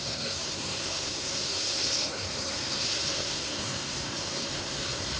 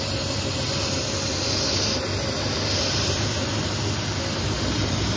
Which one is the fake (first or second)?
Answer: first